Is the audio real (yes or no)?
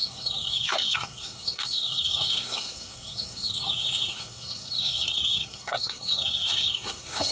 no